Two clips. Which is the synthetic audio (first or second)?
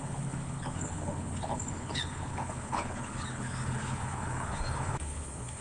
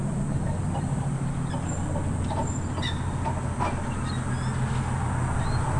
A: first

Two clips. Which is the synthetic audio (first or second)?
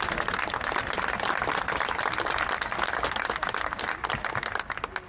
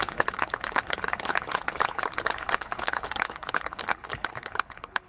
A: second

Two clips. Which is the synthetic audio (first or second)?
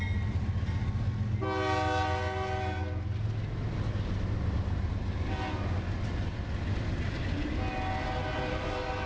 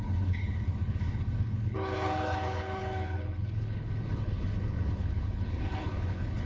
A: second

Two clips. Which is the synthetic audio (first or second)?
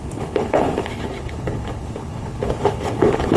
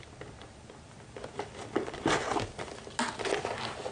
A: first